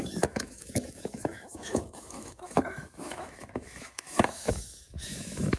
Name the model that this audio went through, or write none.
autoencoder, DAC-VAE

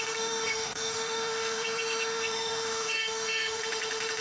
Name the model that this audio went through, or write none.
autoencoder, DAC-VAE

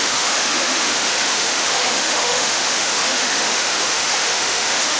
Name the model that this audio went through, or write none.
autoencoder, DAC-VAE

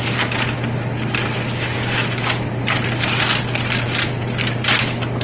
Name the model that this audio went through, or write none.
none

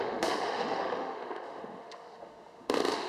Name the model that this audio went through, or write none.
autoencoder, DAC-VAE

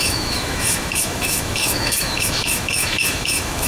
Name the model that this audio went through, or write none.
autoencoder, DAC-VAE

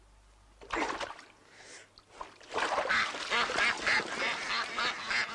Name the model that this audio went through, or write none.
none